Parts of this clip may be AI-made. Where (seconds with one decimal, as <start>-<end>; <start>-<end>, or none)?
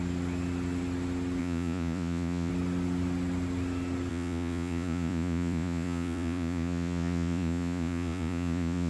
1.4-2.5; 4.1-8.9